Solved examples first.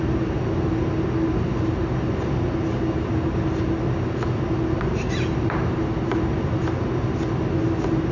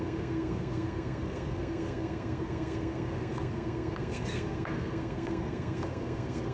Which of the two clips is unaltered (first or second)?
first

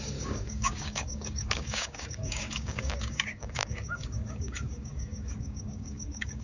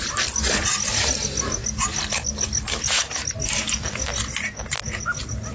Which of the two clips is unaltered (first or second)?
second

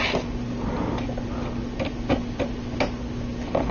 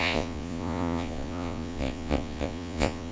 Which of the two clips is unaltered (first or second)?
first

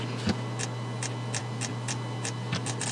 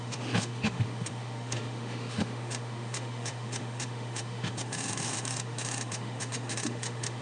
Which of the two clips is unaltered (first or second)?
first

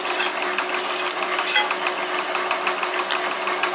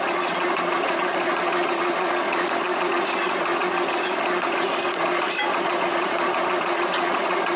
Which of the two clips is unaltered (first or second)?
first